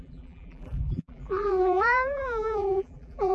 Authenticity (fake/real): fake